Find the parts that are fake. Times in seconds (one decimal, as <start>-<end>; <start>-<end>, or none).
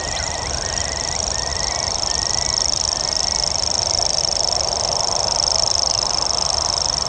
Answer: none